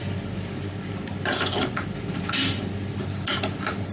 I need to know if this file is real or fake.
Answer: real